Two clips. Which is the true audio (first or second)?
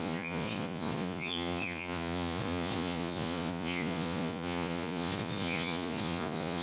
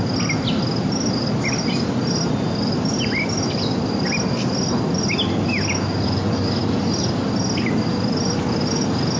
second